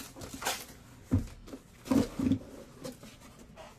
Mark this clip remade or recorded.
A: recorded